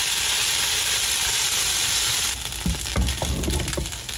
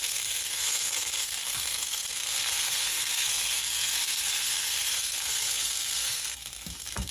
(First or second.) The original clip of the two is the first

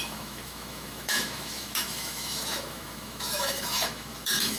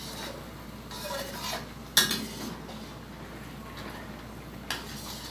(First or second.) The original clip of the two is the second